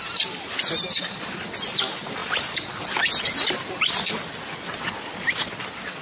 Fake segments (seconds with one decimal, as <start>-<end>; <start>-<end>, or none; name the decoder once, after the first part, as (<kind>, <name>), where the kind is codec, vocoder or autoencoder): none